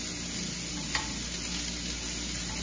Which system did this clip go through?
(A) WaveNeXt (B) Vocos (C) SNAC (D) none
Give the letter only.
D